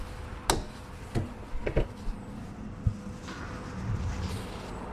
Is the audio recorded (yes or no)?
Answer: yes